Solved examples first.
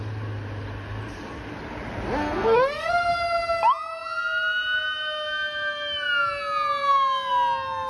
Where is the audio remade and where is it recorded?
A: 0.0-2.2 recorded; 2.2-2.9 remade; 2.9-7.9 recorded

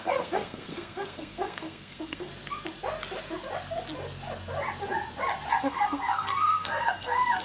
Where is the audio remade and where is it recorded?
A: 0.0-2.3 remade; 2.3-5.5 recorded; 5.5-7.4 remade